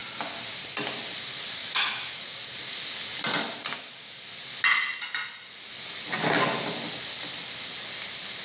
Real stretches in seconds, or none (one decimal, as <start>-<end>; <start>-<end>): 0.0-1.6; 2.2-8.4